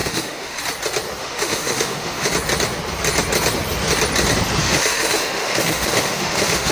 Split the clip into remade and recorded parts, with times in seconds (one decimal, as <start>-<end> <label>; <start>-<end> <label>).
0.0-0.6 remade; 0.6-1.2 recorded; 1.2-2.3 remade; 2.3-4.6 recorded; 4.6-6.7 remade